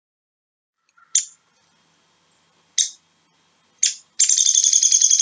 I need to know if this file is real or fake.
real